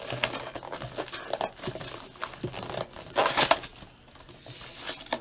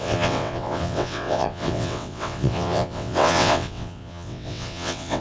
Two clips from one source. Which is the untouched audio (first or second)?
first